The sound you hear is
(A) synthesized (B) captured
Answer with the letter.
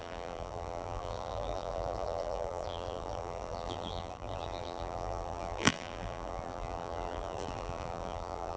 A